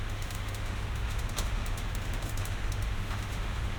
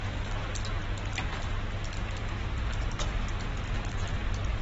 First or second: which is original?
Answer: second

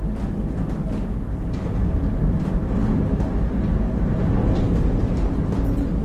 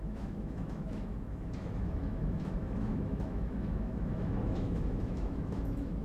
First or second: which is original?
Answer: first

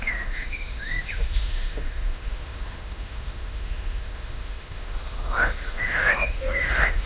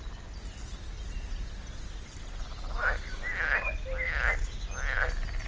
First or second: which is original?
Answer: second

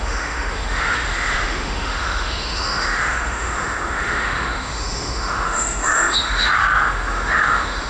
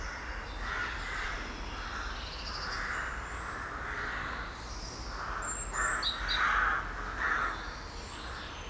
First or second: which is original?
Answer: second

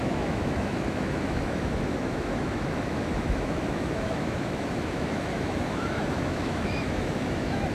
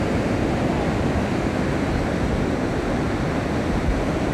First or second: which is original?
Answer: second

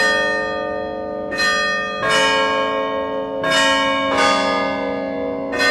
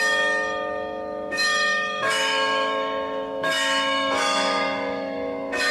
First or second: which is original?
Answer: first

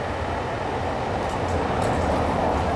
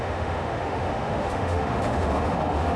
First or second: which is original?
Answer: first